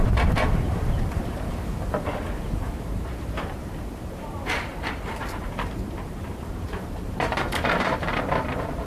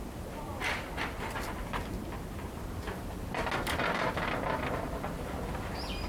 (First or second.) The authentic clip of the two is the second